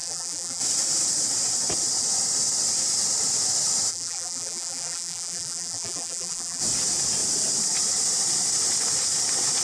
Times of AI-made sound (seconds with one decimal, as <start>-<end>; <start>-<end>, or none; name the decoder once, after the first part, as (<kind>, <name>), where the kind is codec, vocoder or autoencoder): 0.0-0.6 (vocoder, BigVGAN v2); 3.9-6.6